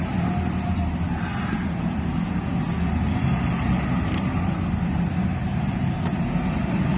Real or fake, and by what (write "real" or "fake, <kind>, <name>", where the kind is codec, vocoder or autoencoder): real